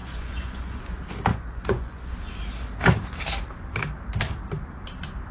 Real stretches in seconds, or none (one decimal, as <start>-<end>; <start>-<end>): 0.8-1.3; 2.1-5.3